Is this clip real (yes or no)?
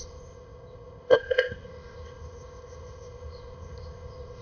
no